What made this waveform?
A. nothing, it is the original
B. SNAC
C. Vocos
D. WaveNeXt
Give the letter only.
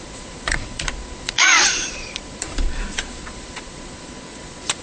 C